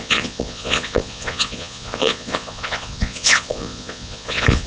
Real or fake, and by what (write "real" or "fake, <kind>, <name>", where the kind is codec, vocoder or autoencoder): fake, vocoder, Vocos